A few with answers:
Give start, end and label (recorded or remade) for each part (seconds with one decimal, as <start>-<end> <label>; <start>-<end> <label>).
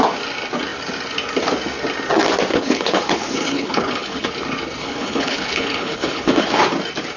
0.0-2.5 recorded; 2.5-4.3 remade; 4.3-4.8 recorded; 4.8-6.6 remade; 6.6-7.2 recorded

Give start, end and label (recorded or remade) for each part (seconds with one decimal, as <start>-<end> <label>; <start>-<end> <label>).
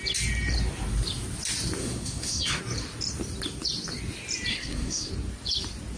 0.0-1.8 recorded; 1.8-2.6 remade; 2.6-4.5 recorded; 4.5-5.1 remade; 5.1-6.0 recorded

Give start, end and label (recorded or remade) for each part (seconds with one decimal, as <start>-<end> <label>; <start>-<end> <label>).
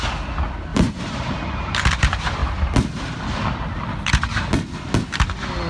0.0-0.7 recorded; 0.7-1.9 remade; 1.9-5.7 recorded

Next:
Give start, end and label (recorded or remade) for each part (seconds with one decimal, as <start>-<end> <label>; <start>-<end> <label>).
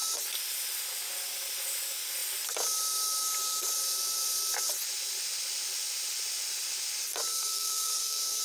0.0-7.3 recorded; 7.3-8.4 remade